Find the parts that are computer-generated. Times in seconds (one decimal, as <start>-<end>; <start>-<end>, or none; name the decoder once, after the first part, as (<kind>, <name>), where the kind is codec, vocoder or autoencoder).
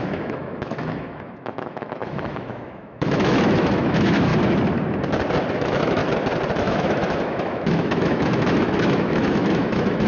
0.0-4.3 (autoencoder, DAC-VAE); 5.5-6.0; 6.6-10.1